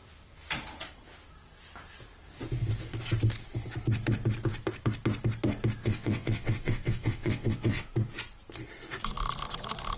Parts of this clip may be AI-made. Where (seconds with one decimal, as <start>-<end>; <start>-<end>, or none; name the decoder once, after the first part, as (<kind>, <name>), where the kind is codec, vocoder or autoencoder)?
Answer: 5.8-7.9 (vocoder, WaveNeXt)